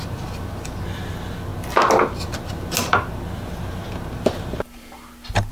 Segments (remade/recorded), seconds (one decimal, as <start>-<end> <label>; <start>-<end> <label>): 0.0-5.5 recorded